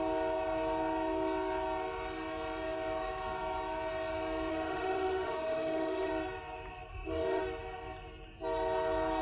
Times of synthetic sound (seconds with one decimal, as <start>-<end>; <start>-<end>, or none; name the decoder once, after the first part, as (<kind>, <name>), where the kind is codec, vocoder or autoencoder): 4.5-6.1 (autoencoder, DAC-VAE); 6.9-7.4